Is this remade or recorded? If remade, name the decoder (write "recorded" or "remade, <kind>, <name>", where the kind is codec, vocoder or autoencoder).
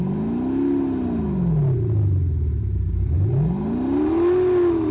recorded